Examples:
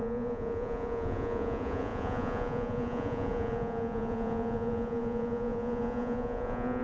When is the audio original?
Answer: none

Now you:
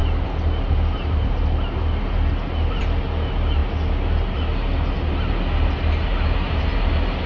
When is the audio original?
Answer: 0.0-7.3

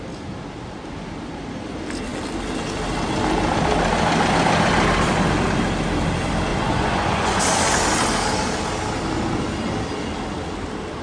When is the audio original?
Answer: 0.0-6.5; 7.4-11.0

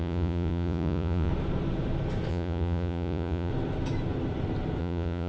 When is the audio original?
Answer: 1.3-2.3; 3.5-4.8

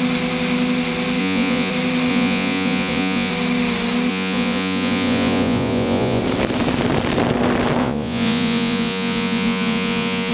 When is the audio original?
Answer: 0.0-1.2; 1.7-2.1; 3.3-4.1; 6.2-7.8

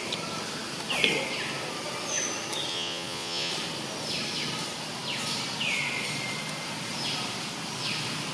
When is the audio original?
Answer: 0.0-2.7; 3.5-8.3

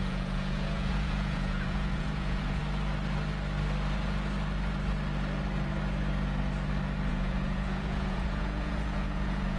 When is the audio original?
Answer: 2.6-7.1

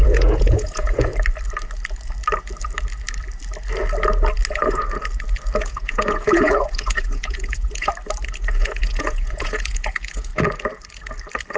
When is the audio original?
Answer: 1.1-5.6; 7.9-8.4; 10.3-11.6